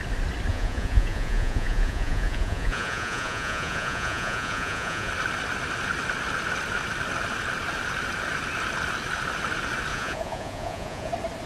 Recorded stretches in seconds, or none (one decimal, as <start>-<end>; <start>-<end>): 0.0-0.5; 5.1-9.9; 11.1-11.5